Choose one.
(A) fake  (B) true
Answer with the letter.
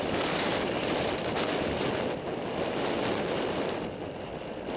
B